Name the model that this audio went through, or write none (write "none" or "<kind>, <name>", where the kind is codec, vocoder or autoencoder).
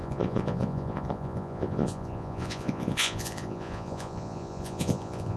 vocoder, Vocos